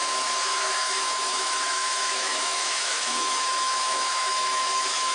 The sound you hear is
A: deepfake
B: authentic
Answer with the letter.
A